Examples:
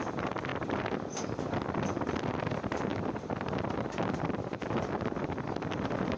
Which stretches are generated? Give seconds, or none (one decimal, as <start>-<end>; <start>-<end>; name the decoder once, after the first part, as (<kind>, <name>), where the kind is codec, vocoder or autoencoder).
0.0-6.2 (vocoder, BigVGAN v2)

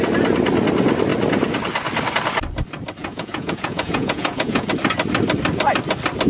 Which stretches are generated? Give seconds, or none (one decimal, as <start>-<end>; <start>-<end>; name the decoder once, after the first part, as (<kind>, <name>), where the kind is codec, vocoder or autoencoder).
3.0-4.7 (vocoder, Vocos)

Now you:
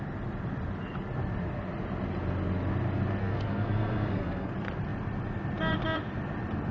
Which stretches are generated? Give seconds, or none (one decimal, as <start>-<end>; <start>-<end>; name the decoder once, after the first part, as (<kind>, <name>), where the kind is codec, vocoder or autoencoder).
3.2-4.5 (codec, SNAC)